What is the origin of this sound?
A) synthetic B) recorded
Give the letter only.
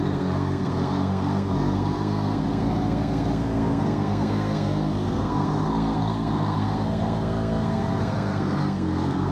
A